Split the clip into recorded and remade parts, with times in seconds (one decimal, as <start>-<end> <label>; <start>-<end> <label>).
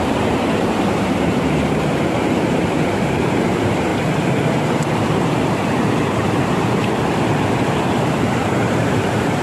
0.0-3.9 remade; 3.9-8.3 recorded; 8.3-9.4 remade